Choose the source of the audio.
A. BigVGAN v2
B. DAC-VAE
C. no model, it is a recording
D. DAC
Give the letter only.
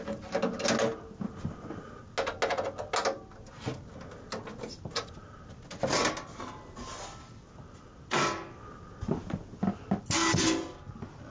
C